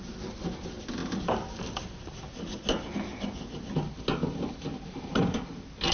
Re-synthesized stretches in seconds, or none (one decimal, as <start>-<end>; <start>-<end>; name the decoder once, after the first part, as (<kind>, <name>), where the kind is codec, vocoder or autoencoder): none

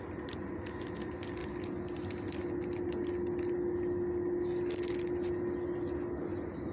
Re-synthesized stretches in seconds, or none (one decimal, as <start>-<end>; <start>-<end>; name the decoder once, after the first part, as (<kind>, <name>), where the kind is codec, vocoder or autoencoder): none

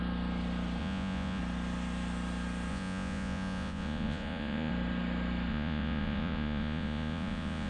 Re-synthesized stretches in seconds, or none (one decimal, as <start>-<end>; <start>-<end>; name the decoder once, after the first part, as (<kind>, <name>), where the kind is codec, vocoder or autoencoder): 0.8-1.4 (vocoder, Vocos); 2.7-4.7; 5.5-7.7

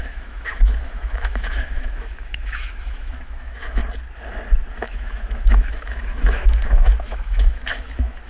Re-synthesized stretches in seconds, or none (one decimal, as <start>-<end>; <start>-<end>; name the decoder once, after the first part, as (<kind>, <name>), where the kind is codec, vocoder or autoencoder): 0.0-3.8 (autoencoder, DAC-VAE); 4.7-8.3